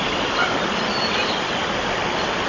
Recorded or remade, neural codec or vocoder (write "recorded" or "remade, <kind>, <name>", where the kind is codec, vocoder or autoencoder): recorded